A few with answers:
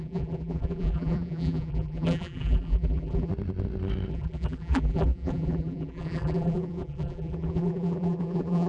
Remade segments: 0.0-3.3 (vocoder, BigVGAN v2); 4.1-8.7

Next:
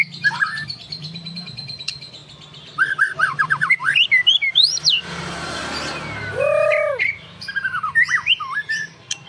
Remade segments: 0.0-2.2 (vocoder, BigVGAN v2); 3.1-5.6; 7.0-9.3

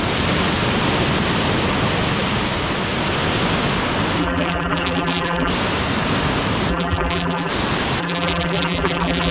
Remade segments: 4.2-5.5 (vocoder, BigVGAN v2); 6.7-7.5; 8.0-9.3

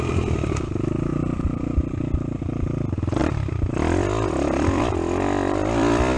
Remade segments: 1.1-1.6 (vocoder, BigVGAN v2); 3.2-6.2

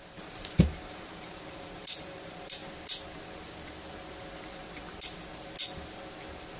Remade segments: 0.0-2.6 (vocoder, BigVGAN v2)